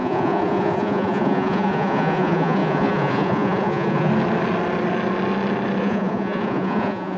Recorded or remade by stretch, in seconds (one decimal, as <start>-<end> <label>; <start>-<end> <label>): 0.0-4.1 remade; 4.1-5.8 recorded; 5.8-7.2 remade